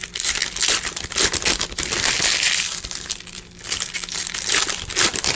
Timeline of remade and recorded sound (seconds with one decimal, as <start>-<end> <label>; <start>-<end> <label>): 0.0-5.4 recorded